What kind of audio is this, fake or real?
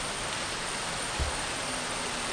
real